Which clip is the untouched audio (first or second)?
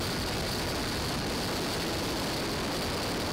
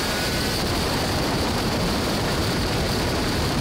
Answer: first